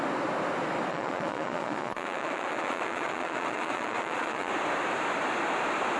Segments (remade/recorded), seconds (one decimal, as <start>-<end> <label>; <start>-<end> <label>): 0.0-0.9 recorded; 0.9-4.5 remade; 4.5-6.0 recorded